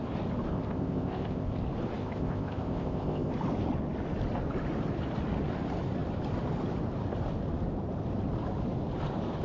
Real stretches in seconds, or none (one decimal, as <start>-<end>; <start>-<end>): 0.0-0.5; 1.6-2.0; 3.3-9.4